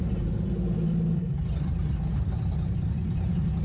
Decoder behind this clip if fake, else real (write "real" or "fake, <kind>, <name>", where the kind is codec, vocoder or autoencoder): real